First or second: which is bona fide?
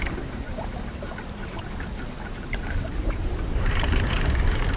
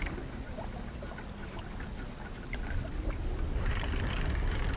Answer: second